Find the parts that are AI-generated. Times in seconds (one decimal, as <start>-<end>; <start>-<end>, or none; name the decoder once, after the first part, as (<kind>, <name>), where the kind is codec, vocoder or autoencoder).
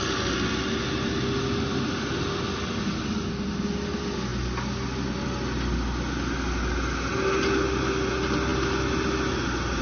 none